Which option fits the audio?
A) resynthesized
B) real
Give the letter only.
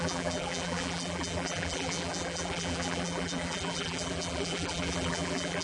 A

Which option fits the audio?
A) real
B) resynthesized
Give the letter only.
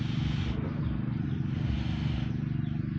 A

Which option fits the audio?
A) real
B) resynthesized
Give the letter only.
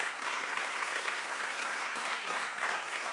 B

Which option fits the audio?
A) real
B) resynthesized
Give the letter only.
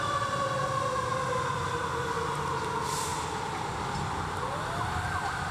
A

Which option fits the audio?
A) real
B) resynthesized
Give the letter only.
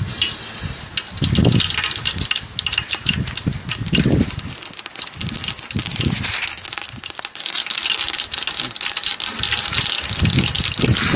A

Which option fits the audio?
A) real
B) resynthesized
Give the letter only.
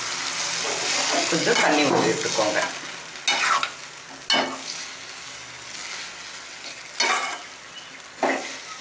A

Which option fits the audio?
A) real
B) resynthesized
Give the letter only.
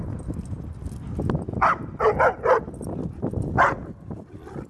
A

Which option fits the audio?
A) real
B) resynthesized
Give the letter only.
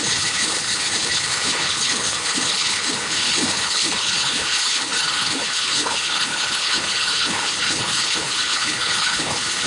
B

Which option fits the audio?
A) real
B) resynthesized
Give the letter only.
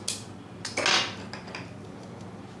A